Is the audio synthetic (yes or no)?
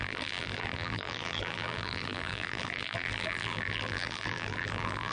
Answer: yes